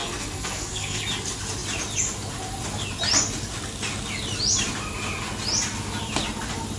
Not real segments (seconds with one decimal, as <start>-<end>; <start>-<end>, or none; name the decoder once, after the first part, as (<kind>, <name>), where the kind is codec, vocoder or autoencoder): 0.0-1.0 (codec, SNAC)